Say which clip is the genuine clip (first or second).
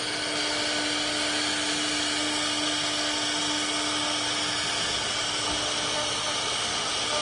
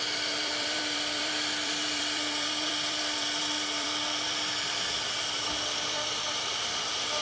first